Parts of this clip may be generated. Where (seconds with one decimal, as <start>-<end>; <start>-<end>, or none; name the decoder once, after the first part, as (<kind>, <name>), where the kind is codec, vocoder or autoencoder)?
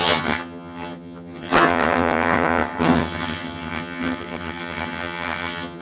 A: 0.0-5.8 (vocoder, HiFi-GAN)